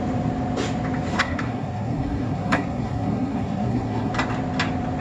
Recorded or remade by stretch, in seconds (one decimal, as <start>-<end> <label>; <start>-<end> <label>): 0.0-1.1 recorded; 1.1-4.1 remade; 4.1-5.0 recorded

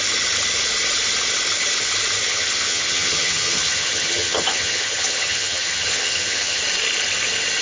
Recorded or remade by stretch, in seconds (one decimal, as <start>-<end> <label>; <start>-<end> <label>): 0.0-2.3 recorded; 2.3-6.6 remade; 6.6-7.6 recorded

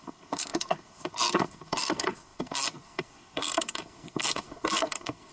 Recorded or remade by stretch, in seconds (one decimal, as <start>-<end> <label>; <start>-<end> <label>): 0.0-5.3 remade

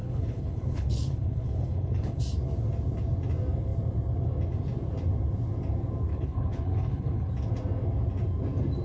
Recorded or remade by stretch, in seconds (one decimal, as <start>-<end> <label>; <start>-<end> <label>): 0.0-2.2 remade; 2.2-6.1 recorded; 6.1-7.3 remade; 7.3-8.8 recorded

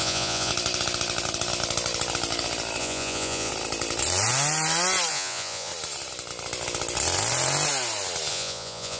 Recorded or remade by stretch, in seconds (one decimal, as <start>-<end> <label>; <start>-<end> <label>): 0.0-0.5 remade; 0.5-2.8 recorded; 2.8-3.5 remade; 3.5-5.1 recorded; 5.1-5.7 remade; 5.7-8.3 recorded; 8.3-9.0 remade

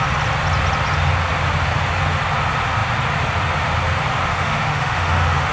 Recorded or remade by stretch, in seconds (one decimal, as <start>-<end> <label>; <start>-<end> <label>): 0.0-4.3 recorded; 4.3-5.5 remade

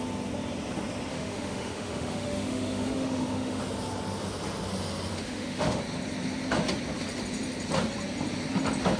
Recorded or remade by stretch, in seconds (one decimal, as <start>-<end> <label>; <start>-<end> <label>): 0.0-1.1 recorded; 1.1-3.6 remade; 3.6-5.1 recorded; 5.1-5.8 remade; 5.8-9.0 recorded